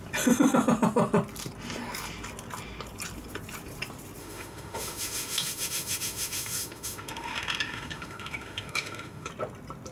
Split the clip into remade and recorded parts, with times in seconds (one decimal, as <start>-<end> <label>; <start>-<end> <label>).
0.0-4.2 recorded; 4.2-9.3 remade; 9.3-9.9 recorded